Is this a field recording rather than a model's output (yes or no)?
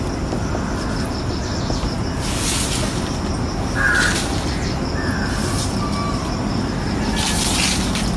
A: yes